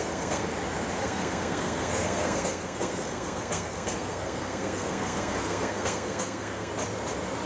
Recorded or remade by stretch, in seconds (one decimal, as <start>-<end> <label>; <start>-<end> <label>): 0.0-0.5 remade; 0.5-1.0 recorded; 1.0-6.7 remade; 6.7-7.5 recorded